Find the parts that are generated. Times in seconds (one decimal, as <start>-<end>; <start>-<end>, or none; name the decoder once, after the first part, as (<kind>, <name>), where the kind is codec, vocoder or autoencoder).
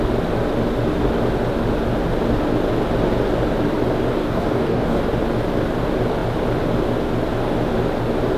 4.2-5.0 (codec, DAC)